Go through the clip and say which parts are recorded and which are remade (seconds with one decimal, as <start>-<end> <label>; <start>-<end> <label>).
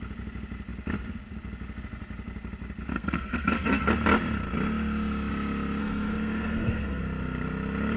0.0-2.9 recorded; 2.9-3.9 remade; 3.9-5.8 recorded; 5.8-7.0 remade; 7.0-8.0 recorded